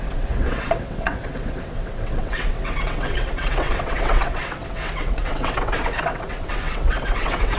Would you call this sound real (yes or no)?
no